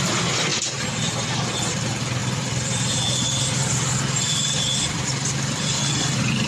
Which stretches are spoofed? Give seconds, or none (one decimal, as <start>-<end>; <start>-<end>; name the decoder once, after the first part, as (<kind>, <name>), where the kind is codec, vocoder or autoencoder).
0.0-0.5 (vocoder, BigVGAN v2); 1.6-6.5